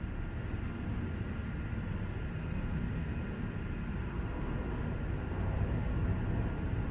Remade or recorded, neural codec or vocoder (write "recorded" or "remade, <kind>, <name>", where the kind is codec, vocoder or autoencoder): recorded